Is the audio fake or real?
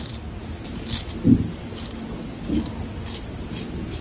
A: real